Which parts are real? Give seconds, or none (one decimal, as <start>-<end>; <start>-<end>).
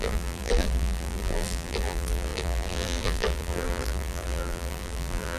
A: none